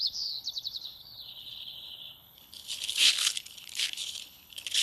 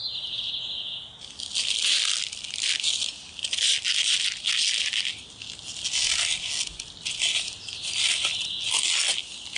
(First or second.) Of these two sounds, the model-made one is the first